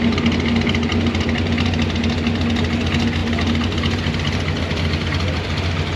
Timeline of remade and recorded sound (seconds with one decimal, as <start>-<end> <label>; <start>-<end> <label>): 0.0-6.0 recorded